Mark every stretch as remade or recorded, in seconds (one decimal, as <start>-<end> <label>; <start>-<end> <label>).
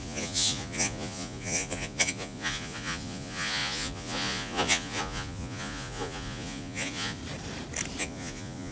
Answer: 0.0-7.2 remade; 7.2-8.0 recorded; 8.0-8.7 remade